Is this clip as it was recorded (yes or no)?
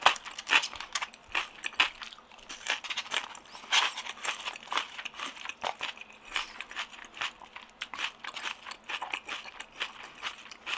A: yes